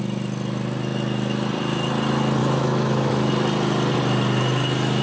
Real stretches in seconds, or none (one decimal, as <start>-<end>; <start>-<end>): 0.0-2.4; 3.3-5.0